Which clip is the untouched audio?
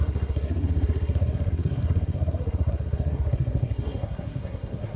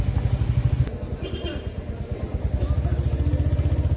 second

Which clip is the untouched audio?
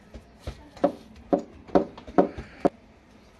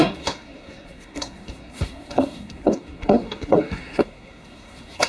first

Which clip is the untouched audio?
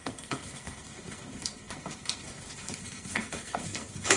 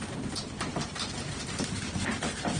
second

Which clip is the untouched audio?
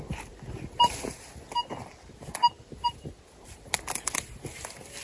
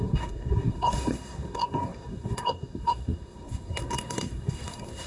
first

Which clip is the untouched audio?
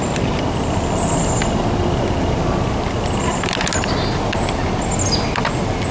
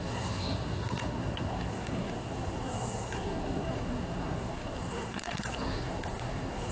first